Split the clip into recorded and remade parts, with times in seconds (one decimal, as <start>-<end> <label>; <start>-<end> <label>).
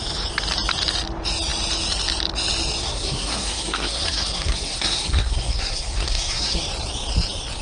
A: 0.0-2.8 recorded; 2.8-6.6 remade; 6.6-7.6 recorded